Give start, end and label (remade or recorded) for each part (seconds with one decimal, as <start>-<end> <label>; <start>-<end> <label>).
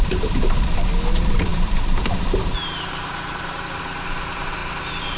0.0-5.2 recorded